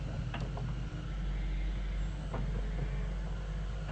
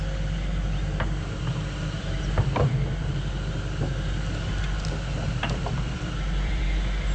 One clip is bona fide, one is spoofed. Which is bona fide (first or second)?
first